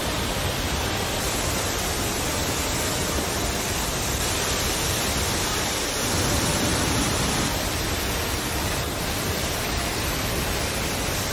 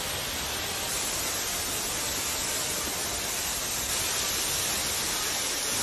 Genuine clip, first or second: second